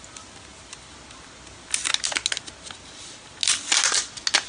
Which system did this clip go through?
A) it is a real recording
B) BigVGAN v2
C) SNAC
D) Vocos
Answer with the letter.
A